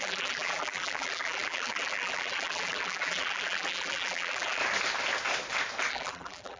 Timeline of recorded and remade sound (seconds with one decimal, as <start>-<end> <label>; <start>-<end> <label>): 0.0-4.6 remade; 4.6-5.9 recorded; 5.9-6.6 remade